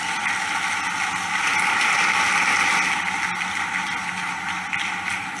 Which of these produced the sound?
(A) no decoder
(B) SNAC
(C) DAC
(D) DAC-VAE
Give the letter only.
A